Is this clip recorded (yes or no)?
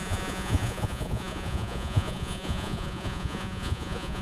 no